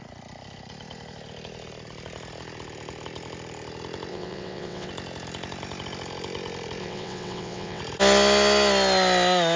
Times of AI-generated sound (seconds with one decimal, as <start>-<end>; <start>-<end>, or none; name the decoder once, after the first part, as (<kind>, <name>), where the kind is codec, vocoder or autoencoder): 4.1-4.9 (vocoder, WaveNeXt); 6.8-7.8